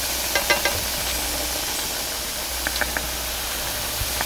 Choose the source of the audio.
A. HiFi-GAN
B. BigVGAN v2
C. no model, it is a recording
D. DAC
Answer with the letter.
C